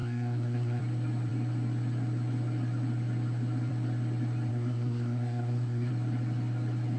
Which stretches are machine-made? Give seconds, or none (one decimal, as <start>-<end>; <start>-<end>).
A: 0.0-0.8; 4.5-5.9